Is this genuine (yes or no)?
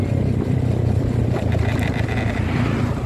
no